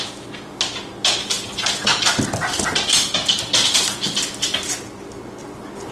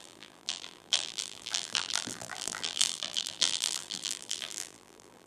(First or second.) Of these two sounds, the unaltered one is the first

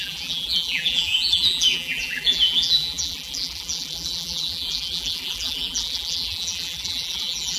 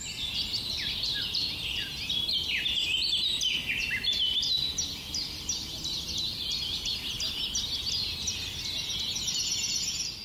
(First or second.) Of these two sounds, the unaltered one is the second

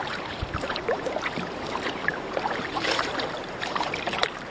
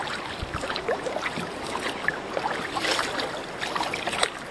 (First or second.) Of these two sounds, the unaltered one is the second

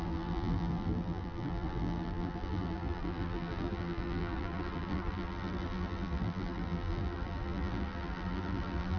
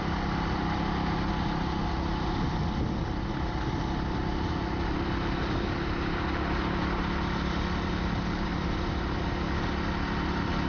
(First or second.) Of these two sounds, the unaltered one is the second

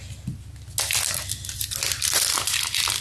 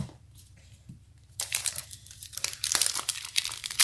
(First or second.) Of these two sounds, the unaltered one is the first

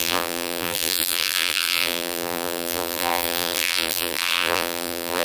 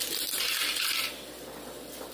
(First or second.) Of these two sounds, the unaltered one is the second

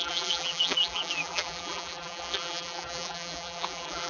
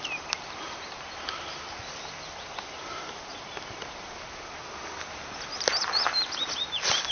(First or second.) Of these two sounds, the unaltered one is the second